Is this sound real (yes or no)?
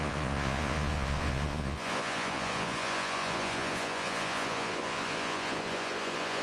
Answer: no